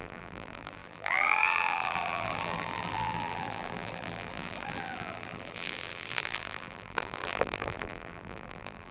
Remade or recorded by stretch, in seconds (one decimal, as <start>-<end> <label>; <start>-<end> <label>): 0.0-8.9 remade